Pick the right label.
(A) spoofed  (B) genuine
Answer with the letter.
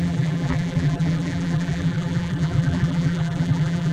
A